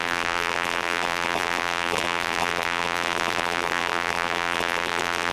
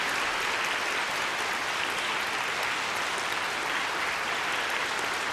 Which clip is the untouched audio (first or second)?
second